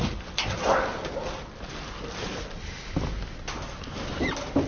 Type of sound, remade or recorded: recorded